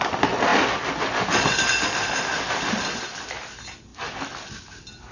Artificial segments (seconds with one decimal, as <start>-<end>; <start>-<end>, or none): none